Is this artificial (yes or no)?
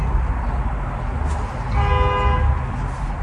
no